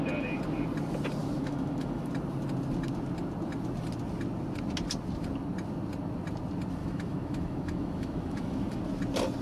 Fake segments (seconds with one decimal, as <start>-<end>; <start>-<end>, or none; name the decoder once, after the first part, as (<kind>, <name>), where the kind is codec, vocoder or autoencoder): 1.2-2.1 (autoencoder, DAC-VAE); 6.8-8.8